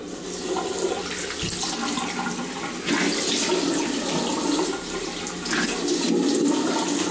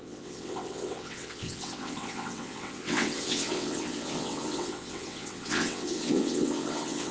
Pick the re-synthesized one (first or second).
second